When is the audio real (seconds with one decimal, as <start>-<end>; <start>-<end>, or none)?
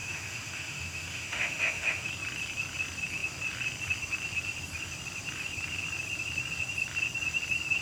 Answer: 2.1-7.8